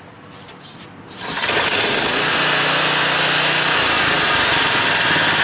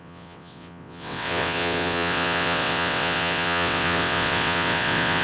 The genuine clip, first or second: first